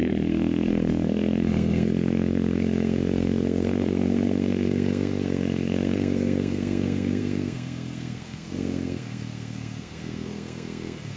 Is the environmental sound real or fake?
fake